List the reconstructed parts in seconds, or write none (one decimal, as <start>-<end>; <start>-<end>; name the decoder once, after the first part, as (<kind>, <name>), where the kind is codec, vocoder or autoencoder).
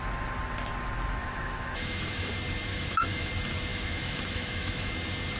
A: 1.2-2.3 (autoencoder, DAC-VAE); 2.7-3.3; 3.7-4.9